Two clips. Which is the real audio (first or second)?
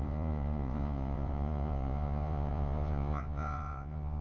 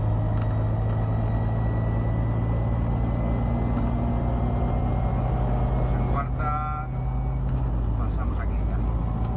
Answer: second